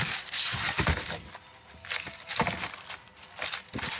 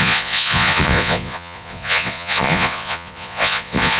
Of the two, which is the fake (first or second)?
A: second